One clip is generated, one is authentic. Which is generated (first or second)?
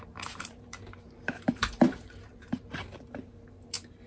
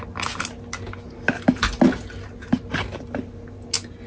first